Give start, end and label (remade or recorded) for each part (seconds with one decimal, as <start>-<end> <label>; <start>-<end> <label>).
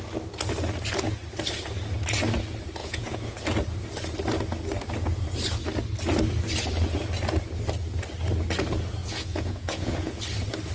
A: 0.0-2.8 recorded; 2.8-3.4 remade; 3.4-9.0 recorded; 9.0-10.2 remade; 10.2-10.7 recorded